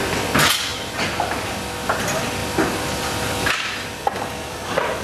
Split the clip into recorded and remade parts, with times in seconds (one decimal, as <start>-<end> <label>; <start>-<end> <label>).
0.0-2.4 recorded; 2.4-3.5 remade; 3.5-5.0 recorded